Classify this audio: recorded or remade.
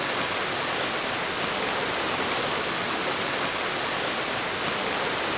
recorded